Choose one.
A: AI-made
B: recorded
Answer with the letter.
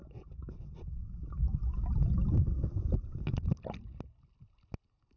B